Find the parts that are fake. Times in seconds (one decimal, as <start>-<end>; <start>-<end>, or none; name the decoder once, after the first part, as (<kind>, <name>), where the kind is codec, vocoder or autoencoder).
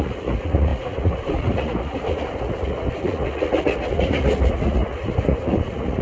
0.0-6.0 (vocoder, Vocos)